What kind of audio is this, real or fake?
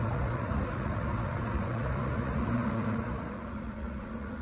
fake